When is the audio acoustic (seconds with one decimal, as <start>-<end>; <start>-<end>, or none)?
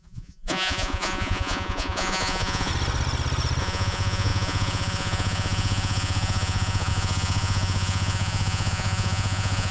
2.7-3.6